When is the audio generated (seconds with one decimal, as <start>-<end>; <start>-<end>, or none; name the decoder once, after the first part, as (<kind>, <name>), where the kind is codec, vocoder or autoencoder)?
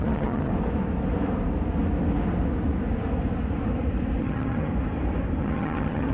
0.0-0.5 (vocoder, HiFi-GAN); 4.2-4.7; 5.4-6.1